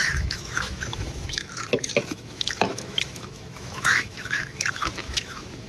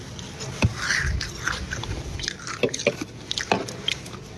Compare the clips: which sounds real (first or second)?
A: second